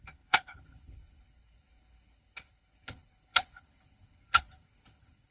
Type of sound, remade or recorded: remade